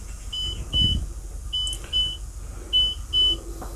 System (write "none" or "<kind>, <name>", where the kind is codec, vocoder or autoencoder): none